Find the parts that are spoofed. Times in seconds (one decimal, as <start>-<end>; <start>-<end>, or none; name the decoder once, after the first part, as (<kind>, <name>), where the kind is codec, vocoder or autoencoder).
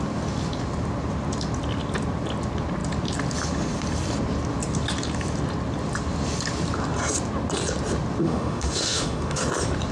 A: 8.2-9.4 (autoencoder, DAC-VAE)